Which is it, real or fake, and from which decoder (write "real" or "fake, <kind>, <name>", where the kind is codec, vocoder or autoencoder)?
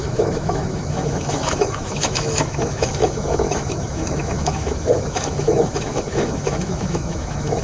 fake, autoencoder, DAC-VAE